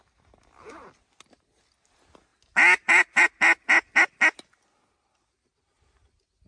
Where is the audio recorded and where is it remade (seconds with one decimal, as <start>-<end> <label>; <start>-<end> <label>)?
0.0-6.5 recorded